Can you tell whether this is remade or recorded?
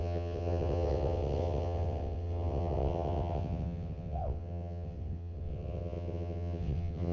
remade